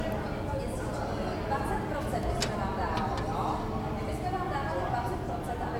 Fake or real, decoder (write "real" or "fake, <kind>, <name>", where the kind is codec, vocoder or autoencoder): real